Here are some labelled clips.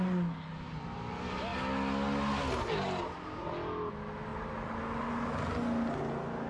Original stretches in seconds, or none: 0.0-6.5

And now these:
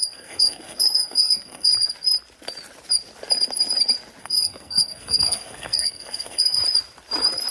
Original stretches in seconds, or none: 1.7-4.2; 6.6-7.5